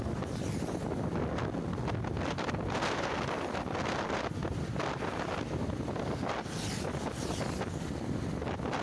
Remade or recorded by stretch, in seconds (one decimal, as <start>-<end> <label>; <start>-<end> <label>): 0.0-4.4 recorded; 4.4-5.0 remade; 5.0-8.8 recorded

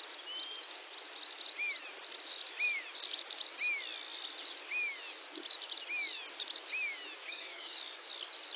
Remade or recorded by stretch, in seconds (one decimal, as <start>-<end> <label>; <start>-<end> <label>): 0.0-7.2 recorded; 7.2-8.1 remade; 8.1-8.6 recorded

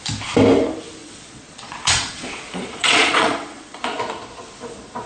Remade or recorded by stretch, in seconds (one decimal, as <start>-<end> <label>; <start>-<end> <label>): 0.0-1.0 recorded; 1.0-4.0 remade; 4.0-5.1 recorded

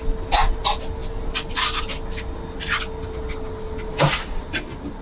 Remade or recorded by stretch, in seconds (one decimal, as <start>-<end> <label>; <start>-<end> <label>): 0.0-5.0 recorded

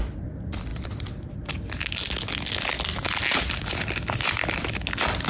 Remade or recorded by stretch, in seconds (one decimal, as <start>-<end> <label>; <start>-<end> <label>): 0.0-0.7 recorded; 0.7-1.3 remade; 1.3-2.9 recorded; 2.9-4.7 remade; 4.7-5.3 recorded

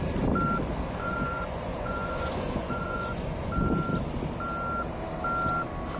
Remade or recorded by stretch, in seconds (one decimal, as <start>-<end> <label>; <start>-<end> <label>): 0.0-1.0 recorded; 1.0-3.5 remade; 3.5-6.0 recorded

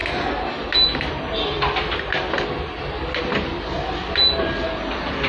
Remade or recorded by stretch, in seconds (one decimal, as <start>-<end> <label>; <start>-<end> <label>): 0.0-5.3 recorded